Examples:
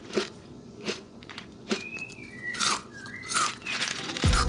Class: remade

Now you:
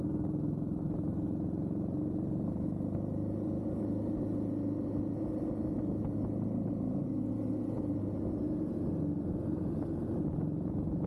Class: recorded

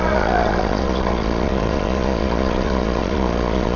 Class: remade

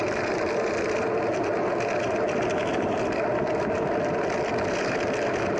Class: recorded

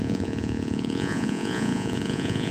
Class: remade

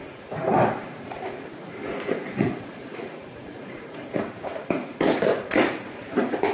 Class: remade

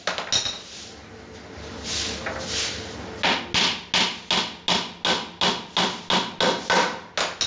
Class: recorded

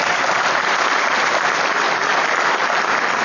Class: recorded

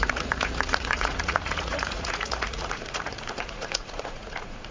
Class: remade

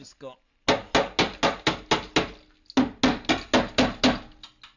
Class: recorded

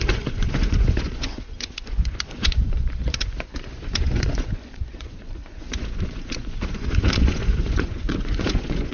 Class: remade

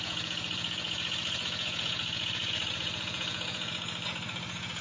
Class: remade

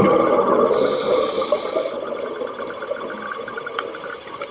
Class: recorded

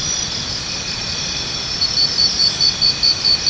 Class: recorded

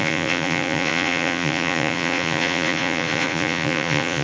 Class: remade